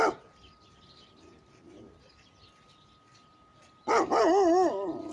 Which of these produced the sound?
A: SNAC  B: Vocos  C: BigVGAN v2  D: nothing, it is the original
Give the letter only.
D